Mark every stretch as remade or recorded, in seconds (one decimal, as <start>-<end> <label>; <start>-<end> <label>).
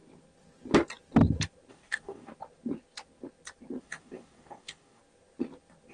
0.0-1.7 recorded; 1.7-2.3 remade; 2.3-3.8 recorded; 3.8-5.0 remade; 5.0-5.9 recorded